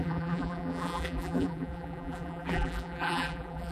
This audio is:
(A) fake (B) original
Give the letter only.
A